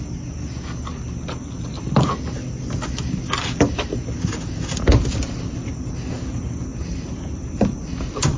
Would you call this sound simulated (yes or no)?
no